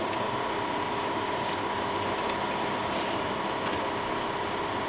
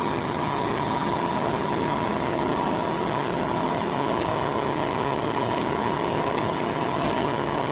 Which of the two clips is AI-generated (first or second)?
second